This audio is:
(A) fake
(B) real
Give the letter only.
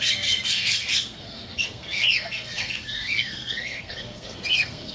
A